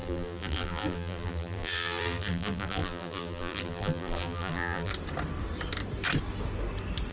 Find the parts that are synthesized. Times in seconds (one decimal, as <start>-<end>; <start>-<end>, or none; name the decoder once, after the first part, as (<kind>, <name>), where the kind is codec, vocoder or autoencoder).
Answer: 0.0-4.9 (vocoder, BigVGAN v2)